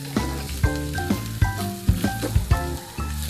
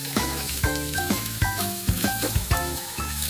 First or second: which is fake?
second